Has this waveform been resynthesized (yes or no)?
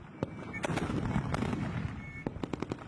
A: no